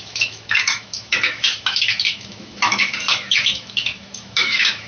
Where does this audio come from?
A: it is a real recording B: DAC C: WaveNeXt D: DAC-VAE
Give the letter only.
D